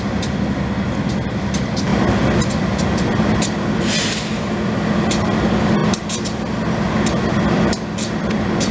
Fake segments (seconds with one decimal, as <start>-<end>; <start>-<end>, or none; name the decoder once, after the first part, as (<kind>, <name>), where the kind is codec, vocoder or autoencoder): none